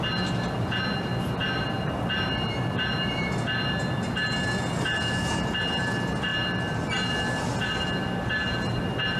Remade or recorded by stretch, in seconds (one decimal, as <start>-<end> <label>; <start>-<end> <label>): 0.0-9.2 recorded